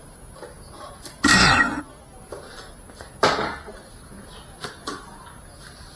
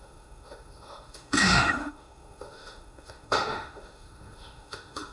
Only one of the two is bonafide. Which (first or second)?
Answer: first